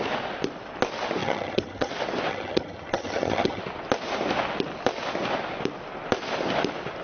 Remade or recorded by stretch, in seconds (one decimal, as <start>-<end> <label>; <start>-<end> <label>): 0.0-1.2 recorded; 1.2-1.9 remade; 1.9-2.3 recorded; 2.3-3.6 remade; 3.6-7.0 recorded